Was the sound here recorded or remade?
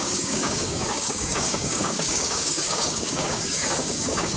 remade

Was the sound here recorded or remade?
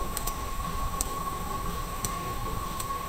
remade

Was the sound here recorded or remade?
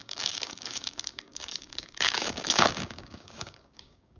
remade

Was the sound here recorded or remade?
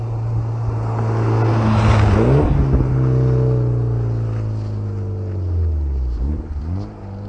recorded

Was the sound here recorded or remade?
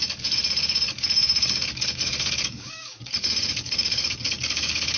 remade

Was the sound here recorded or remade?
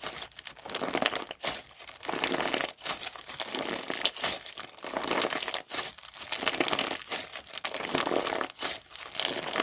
recorded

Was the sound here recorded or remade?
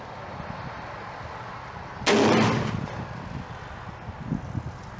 recorded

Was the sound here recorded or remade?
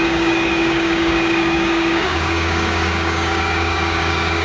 remade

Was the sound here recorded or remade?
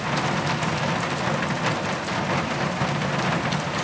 recorded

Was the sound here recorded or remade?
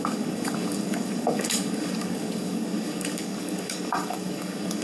remade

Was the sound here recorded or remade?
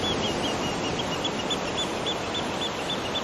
recorded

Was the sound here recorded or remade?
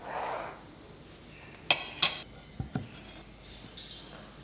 recorded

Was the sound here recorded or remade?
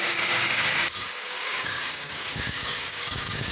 remade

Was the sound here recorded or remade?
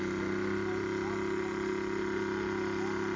recorded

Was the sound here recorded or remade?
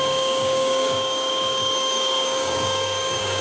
remade